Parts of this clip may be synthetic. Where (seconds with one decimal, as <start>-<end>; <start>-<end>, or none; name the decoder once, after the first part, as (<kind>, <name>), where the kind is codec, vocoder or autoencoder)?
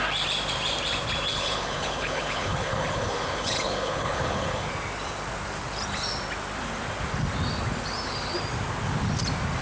1.3-4.7 (codec, HILCodec)